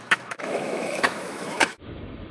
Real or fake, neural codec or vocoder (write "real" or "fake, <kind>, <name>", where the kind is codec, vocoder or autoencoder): fake, autoencoder, DAC-VAE